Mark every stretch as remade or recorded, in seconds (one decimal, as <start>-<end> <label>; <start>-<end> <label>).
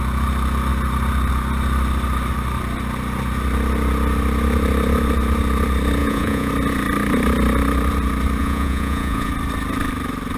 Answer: 0.0-6.0 recorded; 6.0-6.5 remade; 6.5-8.4 recorded; 8.4-9.3 remade; 9.3-10.4 recorded